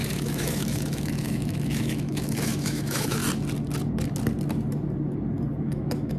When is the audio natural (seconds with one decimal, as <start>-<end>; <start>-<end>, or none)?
3.2-5.6